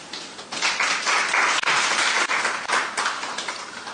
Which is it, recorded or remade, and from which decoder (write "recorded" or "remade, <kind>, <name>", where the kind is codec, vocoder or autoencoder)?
recorded